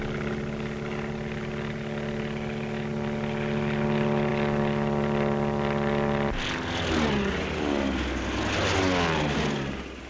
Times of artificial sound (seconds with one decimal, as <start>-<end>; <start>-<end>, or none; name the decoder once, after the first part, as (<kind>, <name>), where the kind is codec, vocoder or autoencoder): none